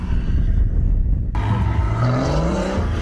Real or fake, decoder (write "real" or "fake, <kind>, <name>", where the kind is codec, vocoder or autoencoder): real